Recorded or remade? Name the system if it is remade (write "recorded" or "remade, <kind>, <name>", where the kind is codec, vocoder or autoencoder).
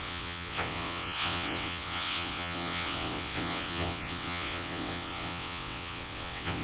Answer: remade, vocoder, WaveNeXt